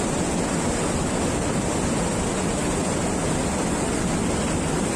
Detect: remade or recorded recorded